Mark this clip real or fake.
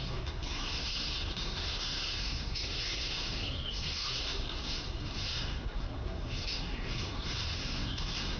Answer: fake